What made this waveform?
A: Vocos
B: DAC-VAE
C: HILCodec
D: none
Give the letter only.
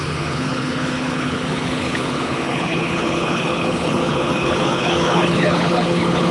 C